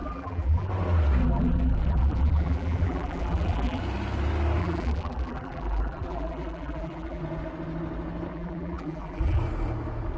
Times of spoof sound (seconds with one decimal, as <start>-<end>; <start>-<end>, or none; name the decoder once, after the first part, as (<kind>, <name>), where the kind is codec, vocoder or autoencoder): 0.0-0.7 (vocoder, BigVGAN v2); 1.2-3.8; 4.6-7.2; 8.3-9.4